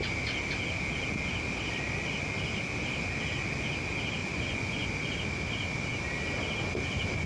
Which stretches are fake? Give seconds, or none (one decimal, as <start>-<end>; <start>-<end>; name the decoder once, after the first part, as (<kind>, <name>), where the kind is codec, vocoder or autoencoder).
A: 4.2-4.9 (vocoder, Vocos)